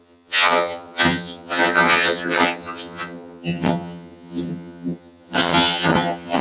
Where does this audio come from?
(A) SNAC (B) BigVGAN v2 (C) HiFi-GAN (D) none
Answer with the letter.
C